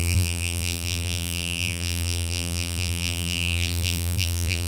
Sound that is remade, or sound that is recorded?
remade